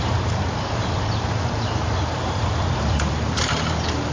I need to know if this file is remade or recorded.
remade